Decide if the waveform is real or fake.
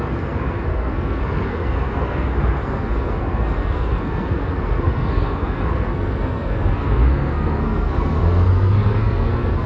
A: fake